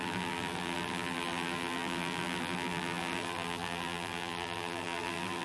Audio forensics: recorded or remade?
remade